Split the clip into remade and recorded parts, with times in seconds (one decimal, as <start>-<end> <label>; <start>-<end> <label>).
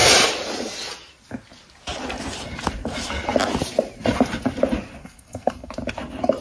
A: 0.0-5.0 recorded; 5.0-5.7 remade; 5.7-6.4 recorded